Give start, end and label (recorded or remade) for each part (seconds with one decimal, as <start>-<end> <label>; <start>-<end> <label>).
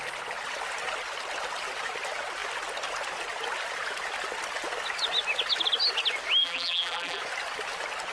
0.0-6.4 recorded; 6.4-7.2 remade; 7.2-8.1 recorded